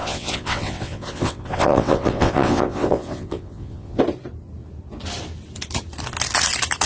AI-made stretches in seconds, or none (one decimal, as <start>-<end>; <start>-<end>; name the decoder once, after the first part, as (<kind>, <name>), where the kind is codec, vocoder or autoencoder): 0.0-4.0 (vocoder, WaveNeXt)